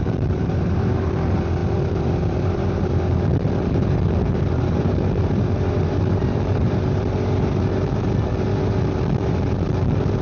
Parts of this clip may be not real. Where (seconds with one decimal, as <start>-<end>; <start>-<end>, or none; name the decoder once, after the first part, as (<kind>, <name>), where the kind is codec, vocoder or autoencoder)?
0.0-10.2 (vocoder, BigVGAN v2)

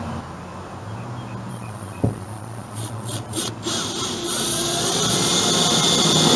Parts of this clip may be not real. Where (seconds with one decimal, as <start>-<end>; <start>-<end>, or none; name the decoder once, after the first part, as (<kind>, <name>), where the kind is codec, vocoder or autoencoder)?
1.5-3.5 (vocoder, Vocos); 4.2-5.3

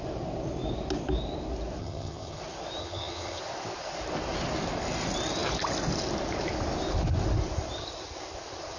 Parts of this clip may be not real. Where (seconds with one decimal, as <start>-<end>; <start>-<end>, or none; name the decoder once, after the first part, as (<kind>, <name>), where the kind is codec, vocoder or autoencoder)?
1.8-2.4 (vocoder, HiFi-GAN); 2.8-3.4

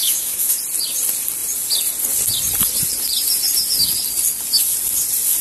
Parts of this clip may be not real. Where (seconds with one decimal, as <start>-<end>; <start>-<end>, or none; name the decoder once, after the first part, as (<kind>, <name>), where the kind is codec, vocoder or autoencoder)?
0.0-0.6 (autoencoder, DAC-VAE)